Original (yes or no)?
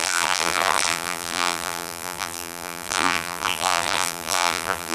no